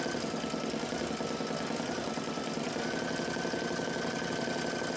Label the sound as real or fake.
real